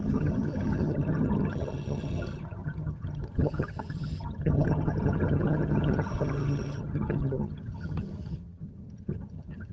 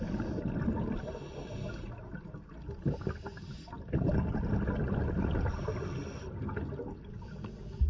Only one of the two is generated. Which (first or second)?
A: first